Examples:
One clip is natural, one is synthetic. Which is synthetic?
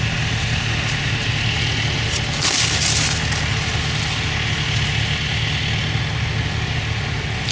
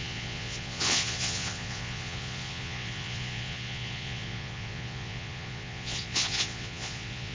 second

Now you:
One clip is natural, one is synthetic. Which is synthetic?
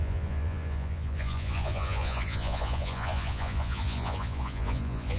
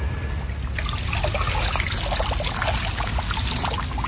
first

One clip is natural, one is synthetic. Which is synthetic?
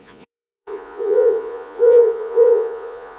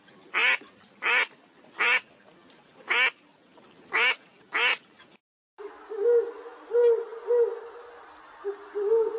first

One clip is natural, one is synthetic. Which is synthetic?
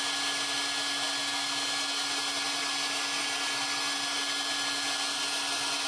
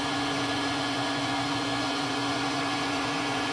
second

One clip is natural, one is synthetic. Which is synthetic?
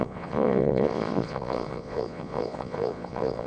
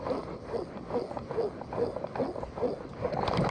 first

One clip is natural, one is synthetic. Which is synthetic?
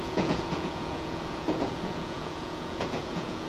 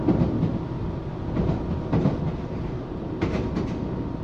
first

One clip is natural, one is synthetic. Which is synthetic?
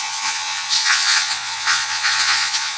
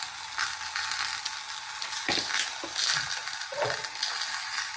first